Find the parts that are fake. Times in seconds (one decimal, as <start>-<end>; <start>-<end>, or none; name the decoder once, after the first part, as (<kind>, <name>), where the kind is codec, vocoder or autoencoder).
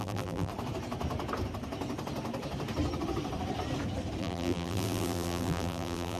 0.0-0.5 (vocoder, BigVGAN v2); 4.2-6.2